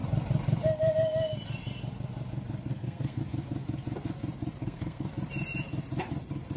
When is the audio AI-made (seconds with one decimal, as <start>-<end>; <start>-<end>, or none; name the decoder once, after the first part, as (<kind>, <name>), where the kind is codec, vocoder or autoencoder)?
2.7-3.2 (codec, SNAC); 4.6-5.1